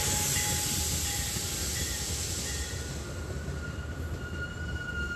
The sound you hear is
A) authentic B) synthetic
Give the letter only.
A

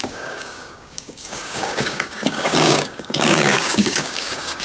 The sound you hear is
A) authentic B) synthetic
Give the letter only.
B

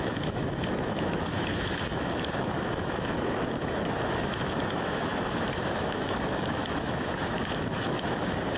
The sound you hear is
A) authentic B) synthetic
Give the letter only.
B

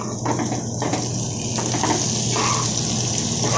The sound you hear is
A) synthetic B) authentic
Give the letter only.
B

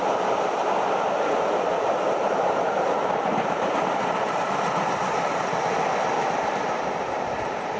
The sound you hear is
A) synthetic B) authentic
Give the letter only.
B